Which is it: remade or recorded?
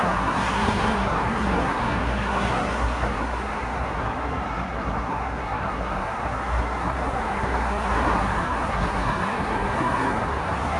remade